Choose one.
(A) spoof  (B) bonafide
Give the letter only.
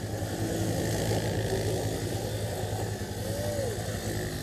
B